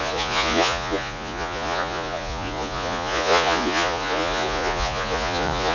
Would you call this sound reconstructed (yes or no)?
yes